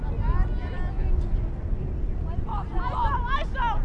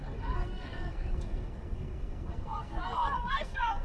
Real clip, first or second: first